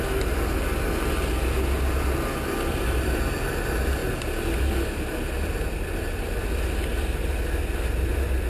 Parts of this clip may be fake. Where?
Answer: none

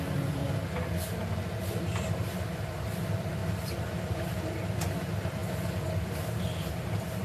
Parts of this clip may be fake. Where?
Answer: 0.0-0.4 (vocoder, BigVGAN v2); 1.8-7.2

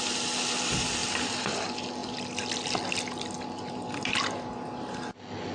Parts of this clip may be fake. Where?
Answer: none

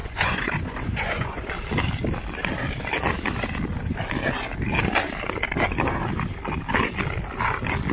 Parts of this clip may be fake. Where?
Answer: 0.0-1.5 (vocoder, Vocos)

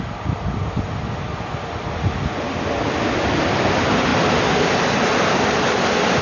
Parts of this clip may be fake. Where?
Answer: none